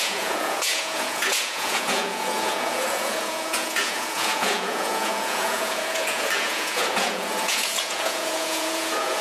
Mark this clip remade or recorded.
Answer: remade